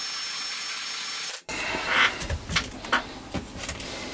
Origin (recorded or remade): recorded